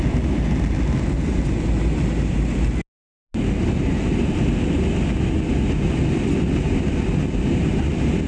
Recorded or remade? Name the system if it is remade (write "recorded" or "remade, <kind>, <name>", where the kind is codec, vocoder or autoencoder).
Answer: recorded